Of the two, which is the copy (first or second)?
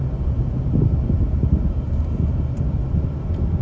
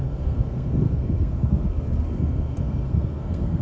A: second